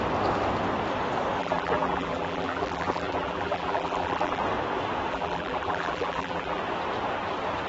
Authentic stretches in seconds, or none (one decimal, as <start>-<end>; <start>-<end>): 0.0-1.4; 4.4-5.1; 6.6-7.7